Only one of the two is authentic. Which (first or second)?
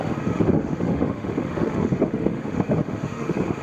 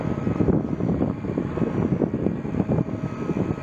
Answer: second